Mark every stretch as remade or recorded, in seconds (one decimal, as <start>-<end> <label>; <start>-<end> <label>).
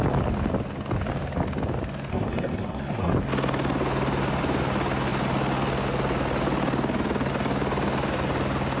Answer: 0.0-2.1 recorded; 2.1-3.1 remade; 3.1-8.8 recorded